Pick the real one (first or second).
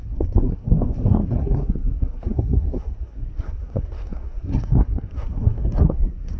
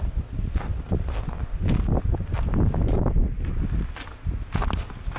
second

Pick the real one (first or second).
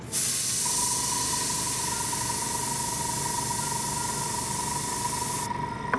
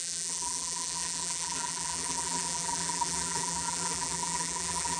first